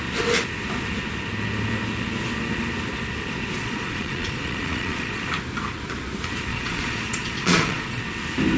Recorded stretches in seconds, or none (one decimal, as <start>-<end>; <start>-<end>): 0.0-3.6; 5.2-6.5; 8.0-8.6